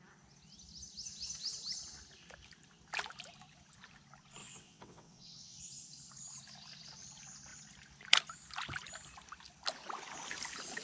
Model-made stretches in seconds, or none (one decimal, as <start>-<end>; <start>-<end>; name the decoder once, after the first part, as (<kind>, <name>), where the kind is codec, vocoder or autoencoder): 4.4-5.6 (vocoder, WaveNeXt)

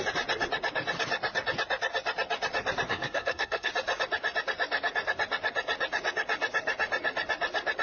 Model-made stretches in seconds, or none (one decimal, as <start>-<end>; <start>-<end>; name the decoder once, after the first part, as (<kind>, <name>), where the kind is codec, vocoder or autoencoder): 2.9-3.7 (codec, SNAC)

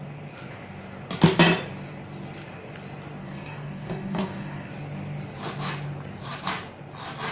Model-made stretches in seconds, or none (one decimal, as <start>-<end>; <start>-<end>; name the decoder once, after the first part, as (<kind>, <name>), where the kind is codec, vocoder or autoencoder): 3.2-4.7 (codec, DAC)

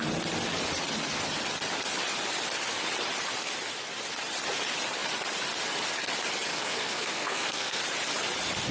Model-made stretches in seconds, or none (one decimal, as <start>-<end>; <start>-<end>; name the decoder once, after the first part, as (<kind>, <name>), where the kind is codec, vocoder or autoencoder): 6.5-7.8 (codec, SNAC)

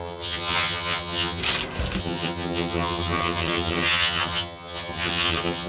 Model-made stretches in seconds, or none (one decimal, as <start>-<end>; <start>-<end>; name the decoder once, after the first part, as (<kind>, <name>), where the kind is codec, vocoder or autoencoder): 0.0-1.4 (vocoder, HiFi-GAN); 2.0-5.7

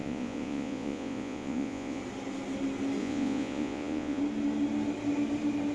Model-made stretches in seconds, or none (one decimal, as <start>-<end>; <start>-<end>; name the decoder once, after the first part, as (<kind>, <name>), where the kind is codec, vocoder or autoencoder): 0.0-2.0 (vocoder, Vocos); 3.0-4.2

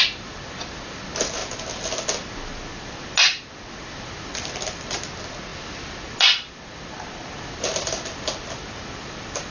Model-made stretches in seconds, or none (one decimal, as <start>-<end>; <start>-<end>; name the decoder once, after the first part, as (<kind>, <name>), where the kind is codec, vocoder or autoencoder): none